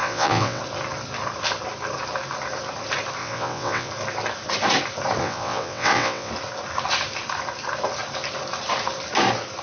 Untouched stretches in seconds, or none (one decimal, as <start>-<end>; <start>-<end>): 0.6-3.2; 3.9-5.2; 6.3-9.6